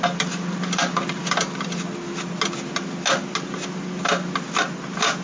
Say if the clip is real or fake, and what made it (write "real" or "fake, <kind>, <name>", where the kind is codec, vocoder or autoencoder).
real